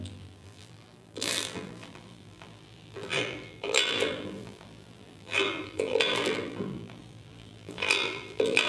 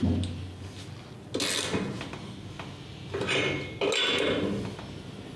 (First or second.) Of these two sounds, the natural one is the second